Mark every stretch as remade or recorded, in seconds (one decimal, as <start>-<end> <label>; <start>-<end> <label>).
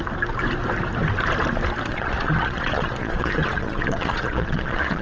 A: 0.0-1.9 recorded; 1.9-5.0 remade